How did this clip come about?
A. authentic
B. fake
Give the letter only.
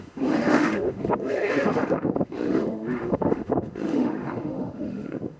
B